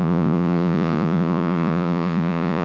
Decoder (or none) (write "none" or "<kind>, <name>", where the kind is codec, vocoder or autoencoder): vocoder, Vocos